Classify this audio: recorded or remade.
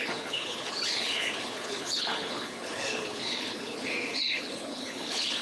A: remade